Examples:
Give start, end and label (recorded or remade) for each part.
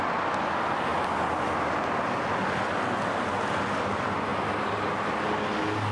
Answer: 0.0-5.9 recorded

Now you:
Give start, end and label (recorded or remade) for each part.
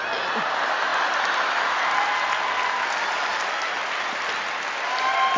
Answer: 0.0-5.4 recorded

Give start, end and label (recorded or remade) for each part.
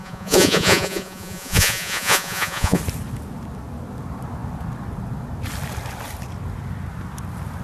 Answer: 0.0-2.8 remade; 2.8-7.6 recorded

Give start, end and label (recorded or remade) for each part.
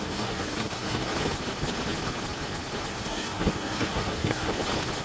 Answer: 0.0-1.1 remade; 1.1-2.9 recorded; 2.9-4.5 remade; 4.5-5.0 recorded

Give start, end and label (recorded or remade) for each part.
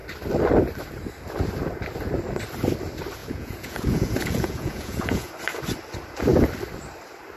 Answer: 0.0-3.2 recorded; 3.2-5.3 remade; 5.3-7.4 recorded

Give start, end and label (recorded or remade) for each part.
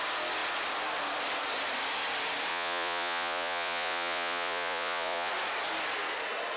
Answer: 0.0-2.5 recorded; 2.5-5.3 remade; 5.3-6.6 recorded